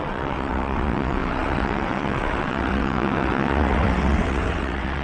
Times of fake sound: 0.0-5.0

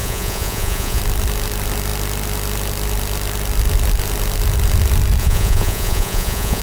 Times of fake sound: 0.0-1.0; 5.2-6.6

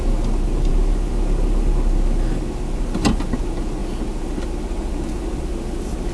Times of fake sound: none